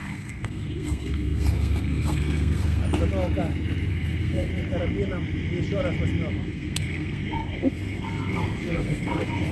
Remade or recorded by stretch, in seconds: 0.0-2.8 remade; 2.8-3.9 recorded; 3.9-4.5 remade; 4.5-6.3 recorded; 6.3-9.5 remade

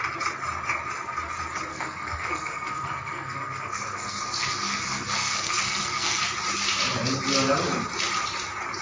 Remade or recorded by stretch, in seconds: 0.0-1.7 recorded; 1.7-6.2 remade; 6.2-8.8 recorded

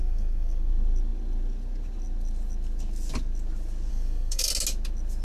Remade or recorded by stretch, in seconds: 0.0-0.7 remade; 0.7-3.9 recorded; 3.9-4.5 remade; 4.5-5.2 recorded

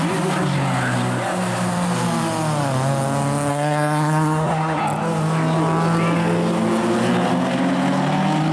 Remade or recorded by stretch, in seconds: 0.0-3.5 recorded; 3.5-4.8 remade; 4.8-8.5 recorded